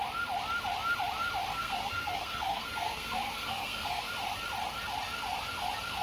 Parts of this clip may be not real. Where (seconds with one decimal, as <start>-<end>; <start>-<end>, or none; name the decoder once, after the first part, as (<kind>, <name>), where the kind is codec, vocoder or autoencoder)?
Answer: 1.5-4.1 (codec, SNAC)